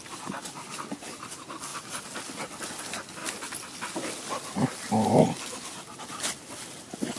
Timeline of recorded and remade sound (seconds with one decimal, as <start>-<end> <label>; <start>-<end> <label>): 0.0-7.2 recorded